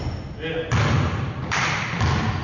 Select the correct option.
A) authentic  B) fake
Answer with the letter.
A